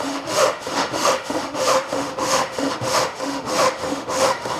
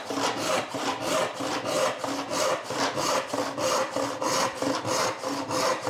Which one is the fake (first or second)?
first